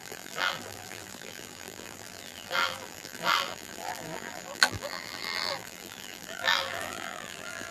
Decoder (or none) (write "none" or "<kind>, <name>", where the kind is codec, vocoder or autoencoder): vocoder, BigVGAN v2